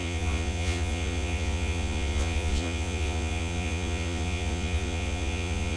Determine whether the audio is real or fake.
fake